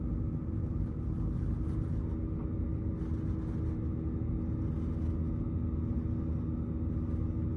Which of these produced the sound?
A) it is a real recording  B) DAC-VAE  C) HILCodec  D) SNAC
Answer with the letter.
A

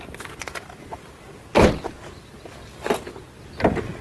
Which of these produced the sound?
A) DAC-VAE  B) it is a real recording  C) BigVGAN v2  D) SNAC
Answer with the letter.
B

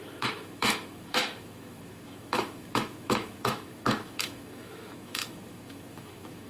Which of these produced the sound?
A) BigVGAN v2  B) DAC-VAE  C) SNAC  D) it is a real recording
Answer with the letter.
B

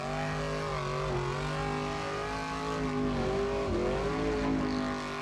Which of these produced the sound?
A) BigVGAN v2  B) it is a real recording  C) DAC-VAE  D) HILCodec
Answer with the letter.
B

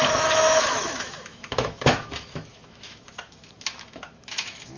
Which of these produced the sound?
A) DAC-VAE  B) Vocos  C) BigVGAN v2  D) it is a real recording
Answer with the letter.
A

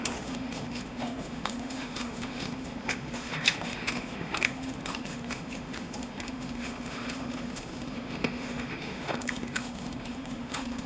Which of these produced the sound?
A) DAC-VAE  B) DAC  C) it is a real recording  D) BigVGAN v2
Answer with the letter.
A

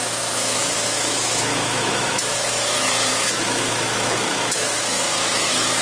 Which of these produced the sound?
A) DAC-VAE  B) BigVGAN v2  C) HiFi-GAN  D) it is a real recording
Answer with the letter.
A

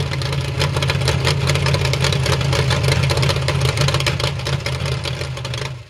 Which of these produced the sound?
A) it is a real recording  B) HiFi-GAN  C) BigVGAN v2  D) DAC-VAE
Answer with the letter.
A